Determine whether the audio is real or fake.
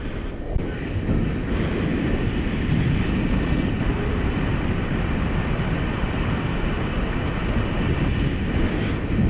real